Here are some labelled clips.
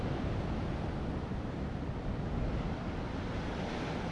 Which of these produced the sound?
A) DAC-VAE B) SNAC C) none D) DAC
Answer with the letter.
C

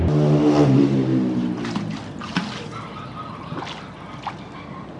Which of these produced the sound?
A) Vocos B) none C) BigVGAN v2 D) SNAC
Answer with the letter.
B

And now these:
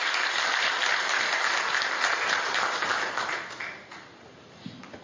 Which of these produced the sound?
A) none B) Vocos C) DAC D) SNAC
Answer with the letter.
A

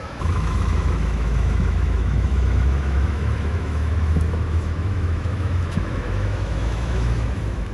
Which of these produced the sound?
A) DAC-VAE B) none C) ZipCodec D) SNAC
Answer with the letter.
A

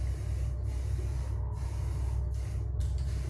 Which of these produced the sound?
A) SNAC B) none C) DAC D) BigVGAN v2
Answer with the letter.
B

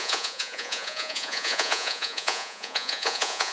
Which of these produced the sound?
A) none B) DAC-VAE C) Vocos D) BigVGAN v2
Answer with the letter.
C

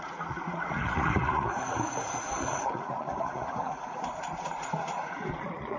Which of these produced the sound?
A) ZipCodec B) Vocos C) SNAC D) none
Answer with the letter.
B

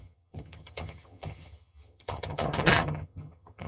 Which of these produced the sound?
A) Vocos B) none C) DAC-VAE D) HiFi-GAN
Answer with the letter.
D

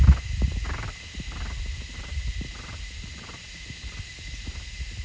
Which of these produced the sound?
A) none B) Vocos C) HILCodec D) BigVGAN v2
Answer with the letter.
A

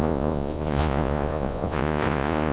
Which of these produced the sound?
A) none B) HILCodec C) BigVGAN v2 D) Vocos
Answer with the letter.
D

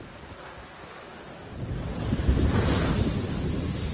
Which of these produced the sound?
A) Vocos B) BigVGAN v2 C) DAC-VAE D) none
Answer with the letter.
D